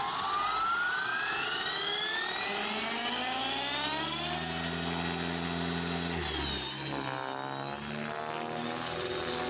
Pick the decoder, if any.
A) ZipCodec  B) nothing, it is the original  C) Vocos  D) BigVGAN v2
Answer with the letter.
B